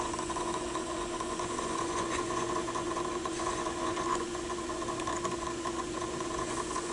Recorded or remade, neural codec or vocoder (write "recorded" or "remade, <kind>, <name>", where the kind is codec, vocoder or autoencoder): remade, vocoder, Vocos